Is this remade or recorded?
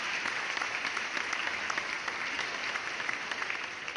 recorded